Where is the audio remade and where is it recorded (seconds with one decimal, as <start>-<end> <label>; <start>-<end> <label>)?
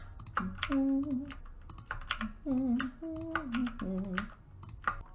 0.0-5.1 recorded